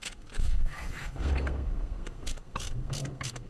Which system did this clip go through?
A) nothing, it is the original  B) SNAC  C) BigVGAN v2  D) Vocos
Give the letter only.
B